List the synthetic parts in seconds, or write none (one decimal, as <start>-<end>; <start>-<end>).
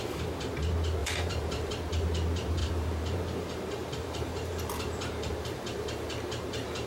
1.0-1.7; 2.6-6.9